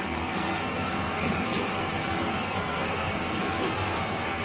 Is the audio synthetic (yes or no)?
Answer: yes